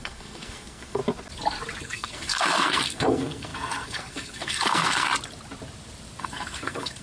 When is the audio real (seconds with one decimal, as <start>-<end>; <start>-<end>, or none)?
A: 1.0-1.8; 5.1-6.2